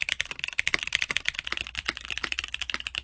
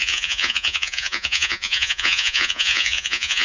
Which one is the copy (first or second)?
second